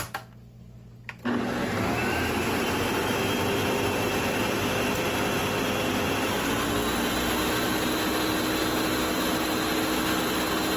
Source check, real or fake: real